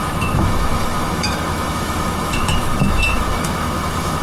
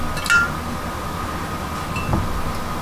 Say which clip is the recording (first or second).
second